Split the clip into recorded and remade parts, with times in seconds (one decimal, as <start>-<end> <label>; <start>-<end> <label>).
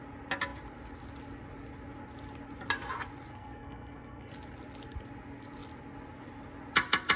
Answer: 0.0-3.3 recorded; 3.3-4.3 remade; 4.3-7.2 recorded